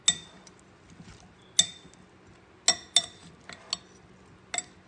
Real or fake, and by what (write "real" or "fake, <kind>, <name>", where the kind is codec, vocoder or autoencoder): real